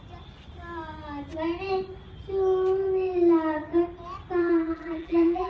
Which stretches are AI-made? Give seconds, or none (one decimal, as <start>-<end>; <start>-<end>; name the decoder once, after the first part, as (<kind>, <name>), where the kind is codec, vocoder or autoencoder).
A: 4.4-5.5 (vocoder, BigVGAN v2)